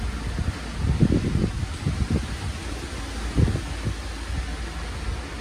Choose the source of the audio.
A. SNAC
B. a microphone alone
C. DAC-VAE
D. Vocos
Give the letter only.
B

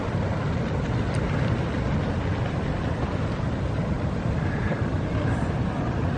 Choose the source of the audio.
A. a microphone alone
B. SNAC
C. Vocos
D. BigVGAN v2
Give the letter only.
A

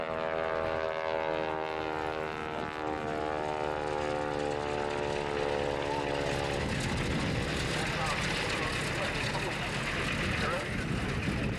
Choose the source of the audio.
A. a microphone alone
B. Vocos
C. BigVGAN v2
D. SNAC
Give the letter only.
A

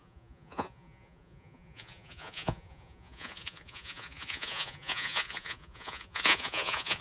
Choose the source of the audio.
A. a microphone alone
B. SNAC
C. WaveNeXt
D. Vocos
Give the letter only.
D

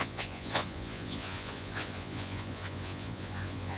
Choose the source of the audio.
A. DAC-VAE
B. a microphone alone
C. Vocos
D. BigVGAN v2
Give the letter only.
C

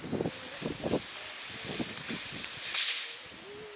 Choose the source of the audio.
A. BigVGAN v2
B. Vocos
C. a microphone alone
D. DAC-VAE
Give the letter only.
C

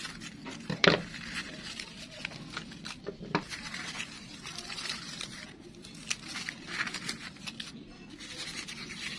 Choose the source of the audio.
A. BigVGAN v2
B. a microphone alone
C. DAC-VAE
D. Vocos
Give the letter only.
B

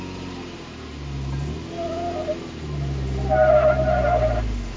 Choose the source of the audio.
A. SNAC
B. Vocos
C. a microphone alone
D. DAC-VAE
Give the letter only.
C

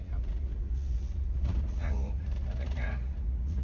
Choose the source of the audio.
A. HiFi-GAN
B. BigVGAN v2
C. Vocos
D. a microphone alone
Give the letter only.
C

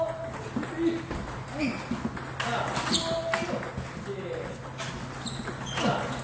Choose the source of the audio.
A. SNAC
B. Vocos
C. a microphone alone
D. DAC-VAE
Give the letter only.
C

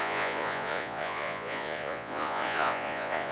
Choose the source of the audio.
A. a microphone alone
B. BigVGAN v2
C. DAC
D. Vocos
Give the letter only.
D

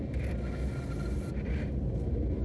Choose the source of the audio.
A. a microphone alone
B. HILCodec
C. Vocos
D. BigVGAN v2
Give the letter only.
A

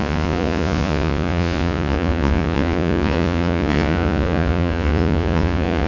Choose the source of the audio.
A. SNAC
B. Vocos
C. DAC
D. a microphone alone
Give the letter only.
B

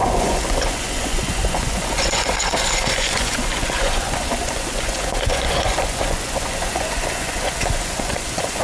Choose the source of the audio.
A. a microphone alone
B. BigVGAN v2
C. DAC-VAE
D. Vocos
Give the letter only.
D